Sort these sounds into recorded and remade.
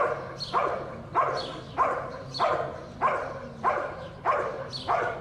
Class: recorded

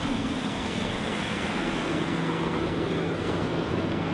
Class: remade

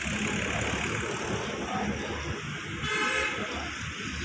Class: recorded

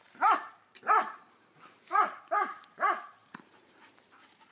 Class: remade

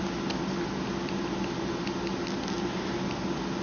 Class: recorded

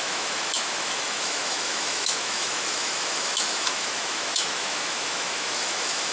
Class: remade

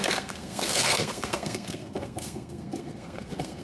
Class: remade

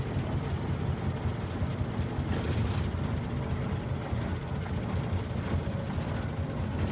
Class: recorded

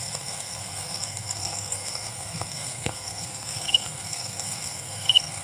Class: remade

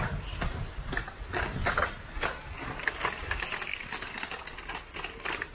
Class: recorded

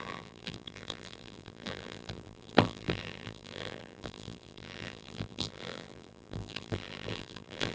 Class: remade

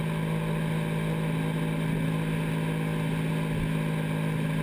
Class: recorded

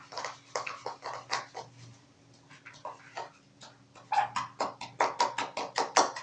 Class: recorded